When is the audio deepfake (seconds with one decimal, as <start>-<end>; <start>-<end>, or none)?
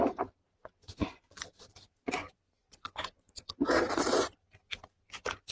0.8-1.4; 2.2-3.5